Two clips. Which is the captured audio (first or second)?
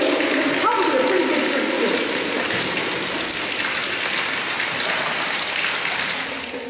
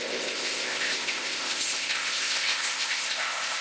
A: first